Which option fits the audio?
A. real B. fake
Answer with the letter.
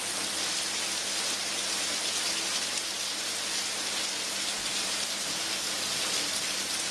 A